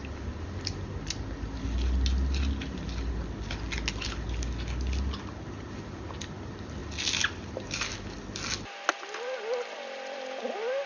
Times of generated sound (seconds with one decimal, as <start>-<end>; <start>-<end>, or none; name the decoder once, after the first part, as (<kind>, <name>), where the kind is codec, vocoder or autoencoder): none